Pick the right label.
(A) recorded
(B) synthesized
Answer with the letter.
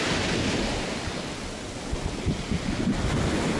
A